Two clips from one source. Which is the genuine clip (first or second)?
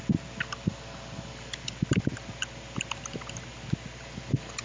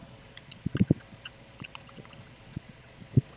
first